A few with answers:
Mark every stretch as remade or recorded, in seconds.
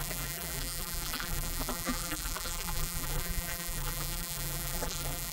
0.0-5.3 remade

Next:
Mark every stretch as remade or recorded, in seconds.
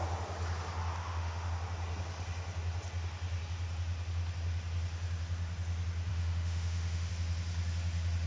0.0-1.0 recorded; 1.0-1.5 remade; 1.5-6.1 recorded; 6.1-7.1 remade; 7.1-8.3 recorded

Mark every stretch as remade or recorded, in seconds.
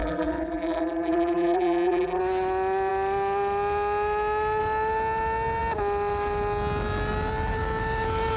0.0-2.2 remade; 2.2-8.4 recorded